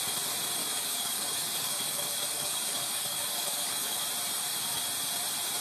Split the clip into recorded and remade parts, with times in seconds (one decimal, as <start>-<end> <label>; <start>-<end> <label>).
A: 0.0-0.6 recorded; 0.6-4.0 remade; 4.0-5.6 recorded